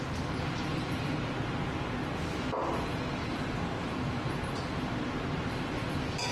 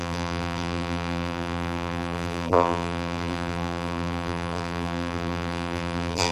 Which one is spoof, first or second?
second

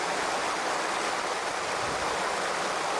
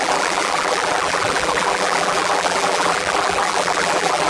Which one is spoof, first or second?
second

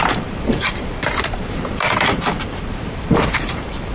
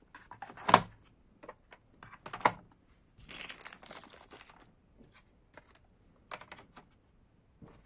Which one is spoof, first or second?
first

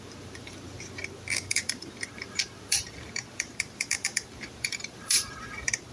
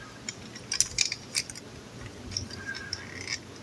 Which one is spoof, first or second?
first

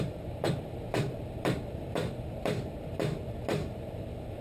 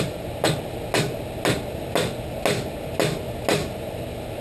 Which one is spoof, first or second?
first